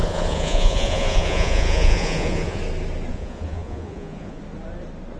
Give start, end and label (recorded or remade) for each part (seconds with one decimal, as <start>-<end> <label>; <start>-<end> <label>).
0.0-2.6 remade; 2.6-3.1 recorded; 3.1-4.4 remade; 4.4-5.2 recorded